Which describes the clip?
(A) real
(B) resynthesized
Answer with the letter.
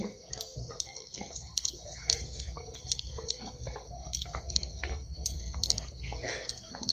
B